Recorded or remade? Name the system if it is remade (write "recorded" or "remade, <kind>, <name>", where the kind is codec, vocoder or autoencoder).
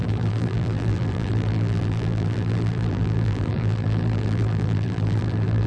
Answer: remade, vocoder, BigVGAN v2